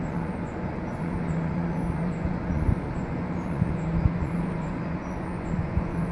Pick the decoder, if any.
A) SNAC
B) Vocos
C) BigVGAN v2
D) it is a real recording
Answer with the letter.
B